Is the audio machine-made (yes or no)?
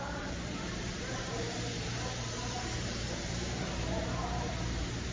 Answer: yes